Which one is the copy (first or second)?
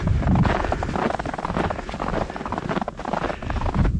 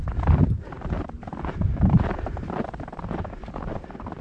second